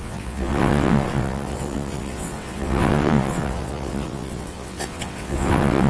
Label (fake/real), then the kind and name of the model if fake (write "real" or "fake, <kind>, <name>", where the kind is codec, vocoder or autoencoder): fake, vocoder, WaveNeXt